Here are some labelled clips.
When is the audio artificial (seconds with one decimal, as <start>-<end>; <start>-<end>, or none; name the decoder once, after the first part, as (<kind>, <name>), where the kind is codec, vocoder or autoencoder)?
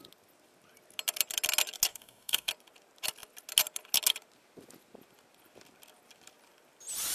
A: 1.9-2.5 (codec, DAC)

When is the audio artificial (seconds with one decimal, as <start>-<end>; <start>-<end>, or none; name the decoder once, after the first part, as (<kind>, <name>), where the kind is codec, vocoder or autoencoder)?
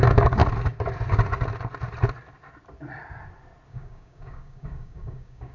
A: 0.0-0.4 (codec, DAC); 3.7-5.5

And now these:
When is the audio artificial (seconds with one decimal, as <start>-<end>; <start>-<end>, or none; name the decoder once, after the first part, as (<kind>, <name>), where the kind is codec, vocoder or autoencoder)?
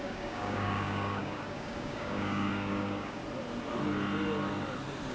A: 0.0-3.2 (codec, DAC)